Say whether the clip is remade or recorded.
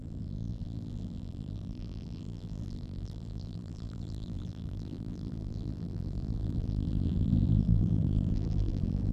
remade